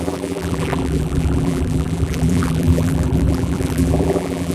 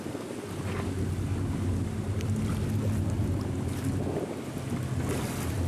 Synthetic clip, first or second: first